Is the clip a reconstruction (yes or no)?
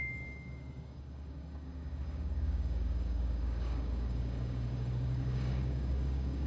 yes